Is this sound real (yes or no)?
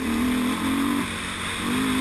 yes